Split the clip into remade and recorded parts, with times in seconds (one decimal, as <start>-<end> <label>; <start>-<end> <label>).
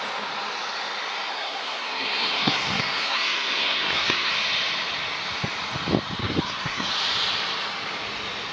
0.0-1.3 recorded; 1.3-4.3 remade; 4.3-6.2 recorded; 6.2-6.9 remade; 6.9-8.5 recorded